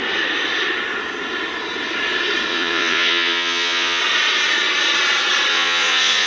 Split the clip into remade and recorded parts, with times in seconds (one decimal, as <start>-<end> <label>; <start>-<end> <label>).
0.0-2.5 recorded; 2.5-4.0 remade; 4.0-5.5 recorded; 5.5-6.3 remade